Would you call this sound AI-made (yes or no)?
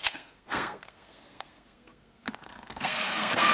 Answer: yes